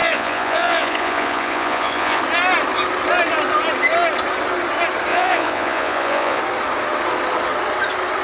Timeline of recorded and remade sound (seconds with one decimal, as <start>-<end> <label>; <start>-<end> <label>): 0.0-2.2 remade; 2.2-5.1 recorded; 5.1-6.4 remade; 6.4-8.2 recorded